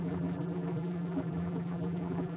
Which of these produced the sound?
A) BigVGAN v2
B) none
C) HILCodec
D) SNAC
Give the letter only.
A